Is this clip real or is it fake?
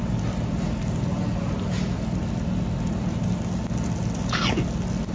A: real